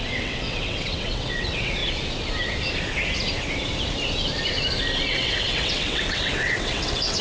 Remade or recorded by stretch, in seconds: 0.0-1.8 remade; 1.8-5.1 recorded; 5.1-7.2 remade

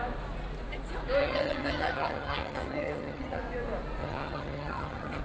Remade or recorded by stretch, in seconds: 0.0-1.2 recorded; 1.2-3.4 remade; 3.4-4.0 recorded; 4.0-5.2 remade